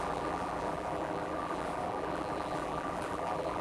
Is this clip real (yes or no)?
no